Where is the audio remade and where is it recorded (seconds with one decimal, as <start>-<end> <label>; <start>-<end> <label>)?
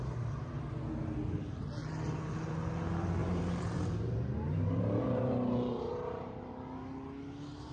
0.0-3.2 recorded; 3.2-6.5 remade; 6.5-7.7 recorded